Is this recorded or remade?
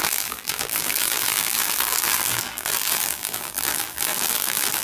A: remade